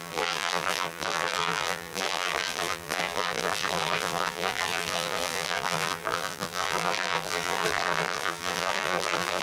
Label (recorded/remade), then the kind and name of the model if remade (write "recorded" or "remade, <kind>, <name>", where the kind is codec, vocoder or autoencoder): remade, vocoder, BigVGAN v2